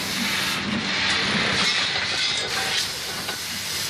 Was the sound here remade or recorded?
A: recorded